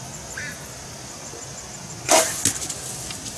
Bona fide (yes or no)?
yes